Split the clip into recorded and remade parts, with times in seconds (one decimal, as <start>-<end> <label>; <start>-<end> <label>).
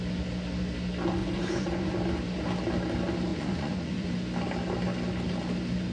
0.0-1.2 recorded; 1.2-1.9 remade; 1.9-3.3 recorded; 3.3-4.1 remade; 4.1-5.9 recorded